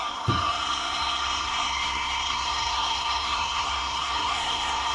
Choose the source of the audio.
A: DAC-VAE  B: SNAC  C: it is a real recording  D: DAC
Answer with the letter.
B